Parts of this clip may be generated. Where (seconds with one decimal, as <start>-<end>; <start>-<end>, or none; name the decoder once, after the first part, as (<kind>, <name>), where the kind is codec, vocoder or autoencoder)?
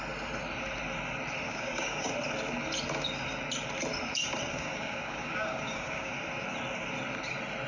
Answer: 1.5-2.1 (codec, DAC); 4.5-6.1